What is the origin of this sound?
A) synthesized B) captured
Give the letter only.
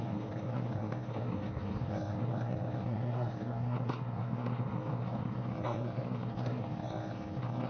A